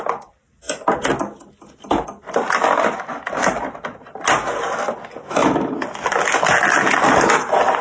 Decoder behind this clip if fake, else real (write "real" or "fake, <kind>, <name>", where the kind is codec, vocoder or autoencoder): real